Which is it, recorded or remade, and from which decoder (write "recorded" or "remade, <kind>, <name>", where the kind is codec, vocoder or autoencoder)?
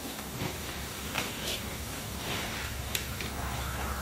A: remade, codec, DAC